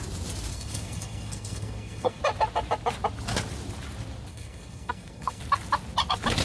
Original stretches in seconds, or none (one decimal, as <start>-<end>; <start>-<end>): 0.0-0.5; 2.2-4.3; 5.4-6.4